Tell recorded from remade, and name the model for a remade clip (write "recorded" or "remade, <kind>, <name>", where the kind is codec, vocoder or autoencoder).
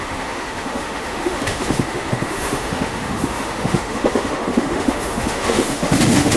remade, autoencoder, DAC-VAE